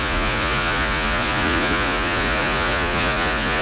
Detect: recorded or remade remade